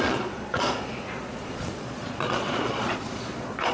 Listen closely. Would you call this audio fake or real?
fake